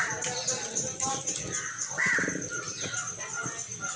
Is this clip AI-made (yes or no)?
no